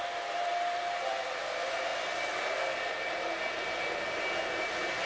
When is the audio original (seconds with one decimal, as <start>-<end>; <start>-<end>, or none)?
0.0-5.1

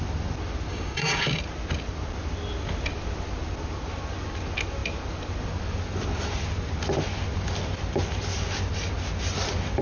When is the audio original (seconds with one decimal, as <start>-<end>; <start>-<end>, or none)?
0.0-0.7; 1.4-9.8

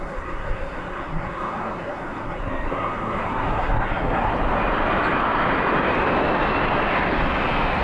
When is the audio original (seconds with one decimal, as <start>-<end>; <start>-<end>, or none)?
4.3-7.8

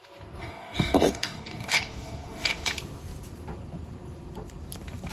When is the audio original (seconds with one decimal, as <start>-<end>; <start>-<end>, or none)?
0.0-0.4; 2.7-5.1